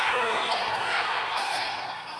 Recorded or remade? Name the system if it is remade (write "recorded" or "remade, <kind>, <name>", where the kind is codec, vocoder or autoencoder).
remade, codec, SNAC